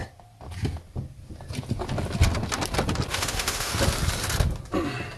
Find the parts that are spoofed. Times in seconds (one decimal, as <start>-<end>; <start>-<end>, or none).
3.1-3.7